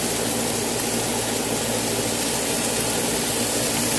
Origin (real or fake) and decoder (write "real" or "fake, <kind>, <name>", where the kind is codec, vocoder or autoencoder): real